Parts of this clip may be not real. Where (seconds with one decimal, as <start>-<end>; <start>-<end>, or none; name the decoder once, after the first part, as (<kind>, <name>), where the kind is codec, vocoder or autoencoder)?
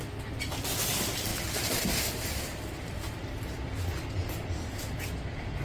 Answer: none